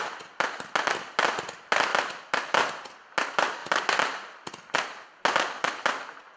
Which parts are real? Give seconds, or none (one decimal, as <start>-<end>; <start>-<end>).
0.0-6.4